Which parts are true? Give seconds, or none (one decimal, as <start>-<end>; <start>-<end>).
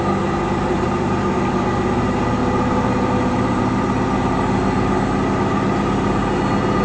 0.0-2.4; 3.6-6.8